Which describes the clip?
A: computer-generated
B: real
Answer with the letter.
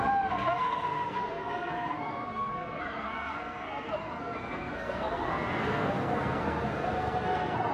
A